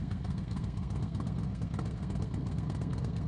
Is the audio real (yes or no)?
no